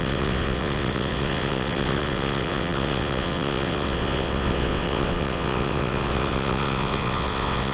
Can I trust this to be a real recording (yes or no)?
no